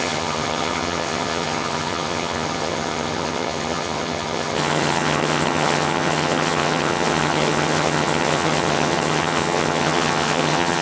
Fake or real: fake